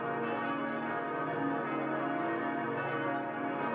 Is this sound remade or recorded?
recorded